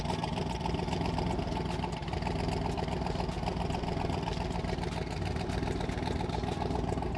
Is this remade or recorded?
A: recorded